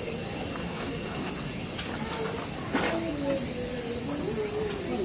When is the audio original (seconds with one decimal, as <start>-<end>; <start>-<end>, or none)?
0.0-0.6; 1.3-5.0